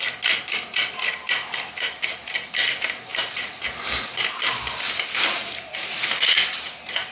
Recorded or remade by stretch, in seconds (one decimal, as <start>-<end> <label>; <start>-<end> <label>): 0.0-3.1 recorded; 3.1-3.7 remade; 3.7-7.1 recorded